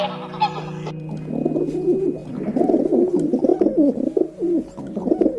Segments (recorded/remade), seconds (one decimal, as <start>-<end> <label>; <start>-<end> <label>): 0.0-5.4 recorded